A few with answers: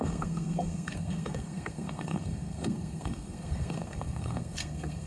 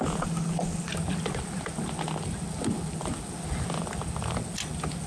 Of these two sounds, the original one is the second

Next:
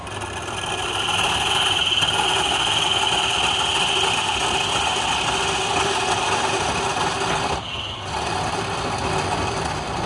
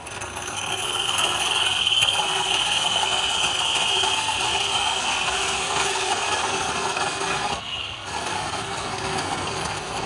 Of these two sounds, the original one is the first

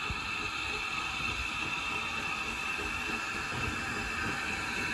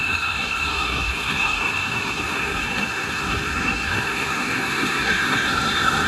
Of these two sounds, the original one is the first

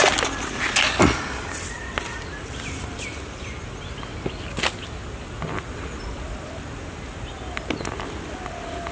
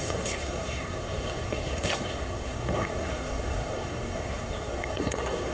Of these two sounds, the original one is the first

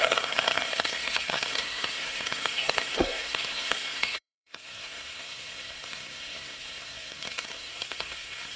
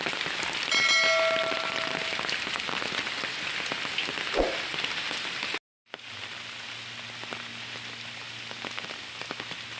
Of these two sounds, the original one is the second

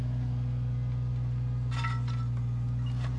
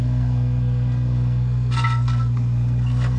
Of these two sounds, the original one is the first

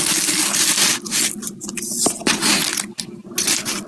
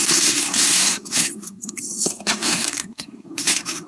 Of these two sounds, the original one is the first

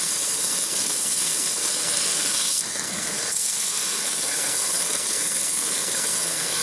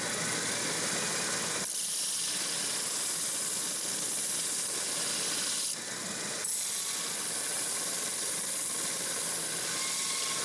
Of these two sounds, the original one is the second